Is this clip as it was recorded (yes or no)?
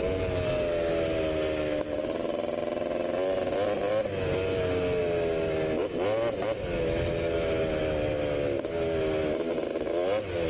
yes